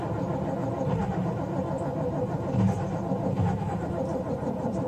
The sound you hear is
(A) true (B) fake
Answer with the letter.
B